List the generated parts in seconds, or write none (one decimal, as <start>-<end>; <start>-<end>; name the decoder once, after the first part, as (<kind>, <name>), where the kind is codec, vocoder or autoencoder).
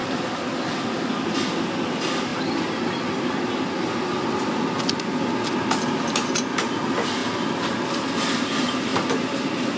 none